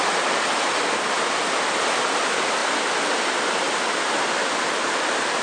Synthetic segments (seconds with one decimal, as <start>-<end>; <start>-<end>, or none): none